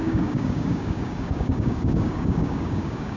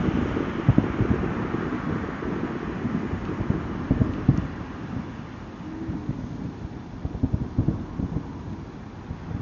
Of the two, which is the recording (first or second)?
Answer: second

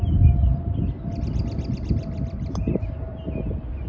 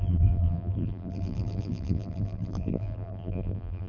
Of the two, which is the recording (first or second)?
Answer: first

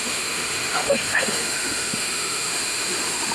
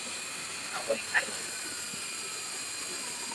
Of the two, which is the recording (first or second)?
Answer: second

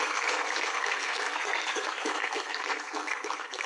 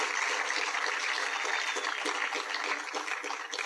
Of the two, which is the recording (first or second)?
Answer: second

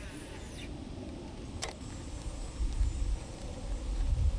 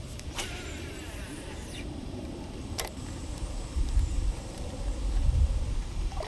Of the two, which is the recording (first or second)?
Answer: first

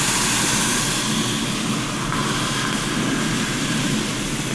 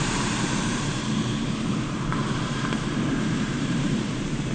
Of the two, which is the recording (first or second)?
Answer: first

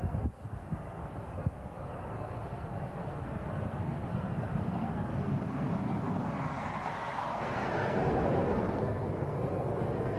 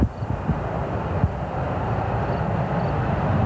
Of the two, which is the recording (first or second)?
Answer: second